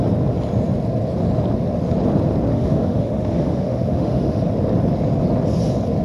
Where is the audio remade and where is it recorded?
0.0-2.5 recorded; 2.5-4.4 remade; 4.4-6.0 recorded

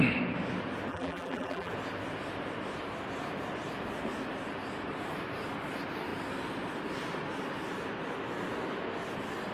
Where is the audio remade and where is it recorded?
0.0-0.9 recorded; 0.9-1.7 remade; 1.7-9.5 recorded

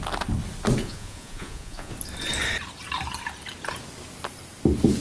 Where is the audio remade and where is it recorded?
0.0-0.8 recorded; 0.8-1.9 remade; 1.9-5.0 recorded

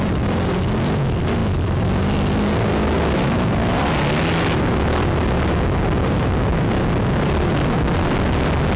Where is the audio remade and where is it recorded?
0.0-8.8 recorded

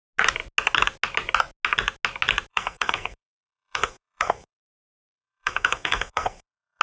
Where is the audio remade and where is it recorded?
0.0-2.5 recorded; 2.5-6.8 remade

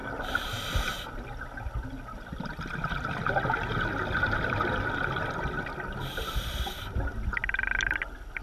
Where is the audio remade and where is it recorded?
0.0-0.9 remade; 0.9-8.4 recorded

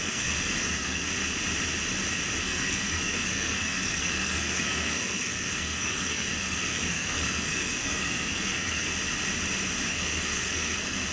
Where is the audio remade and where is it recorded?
0.0-1.1 remade; 1.1-2.4 recorded; 2.4-8.9 remade; 8.9-9.9 recorded; 9.9-11.1 remade

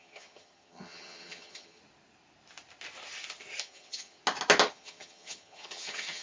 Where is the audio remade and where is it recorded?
0.0-1.8 remade; 1.8-3.6 recorded; 3.6-4.2 remade; 4.2-4.7 recorded; 4.7-6.2 remade